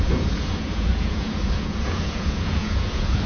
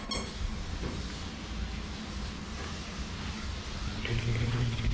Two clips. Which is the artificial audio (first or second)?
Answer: first